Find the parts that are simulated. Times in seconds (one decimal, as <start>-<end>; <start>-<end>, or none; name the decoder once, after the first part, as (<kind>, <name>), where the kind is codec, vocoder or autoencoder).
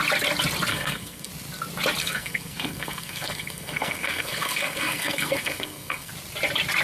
0.7-1.3 (codec, SNAC); 2.0-6.1